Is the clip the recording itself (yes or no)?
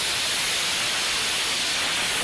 yes